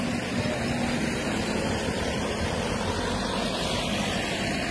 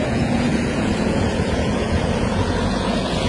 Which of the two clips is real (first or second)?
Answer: first